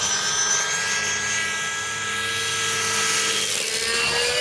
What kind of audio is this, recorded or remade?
recorded